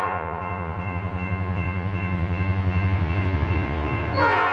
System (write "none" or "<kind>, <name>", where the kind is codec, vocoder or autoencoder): vocoder, Vocos